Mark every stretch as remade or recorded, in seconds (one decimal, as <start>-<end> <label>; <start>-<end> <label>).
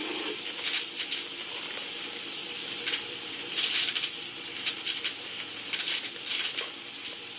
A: 0.0-1.7 remade; 1.7-2.4 recorded; 2.4-5.5 remade; 5.5-7.4 recorded